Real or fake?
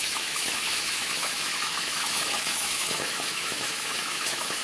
fake